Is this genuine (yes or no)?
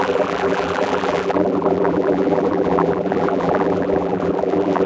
no